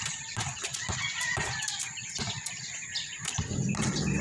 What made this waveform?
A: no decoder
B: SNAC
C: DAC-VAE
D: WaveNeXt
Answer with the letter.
A